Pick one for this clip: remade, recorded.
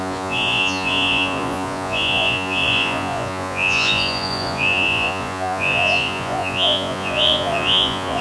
remade